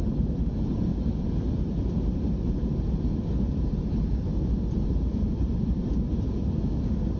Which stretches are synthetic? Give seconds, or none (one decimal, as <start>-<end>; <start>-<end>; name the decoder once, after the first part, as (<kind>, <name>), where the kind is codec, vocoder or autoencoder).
0.0-7.2 (vocoder, BigVGAN v2)